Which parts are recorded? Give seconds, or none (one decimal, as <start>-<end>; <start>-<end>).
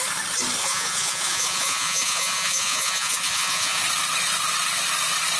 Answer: 0.0-0.6; 3.8-5.4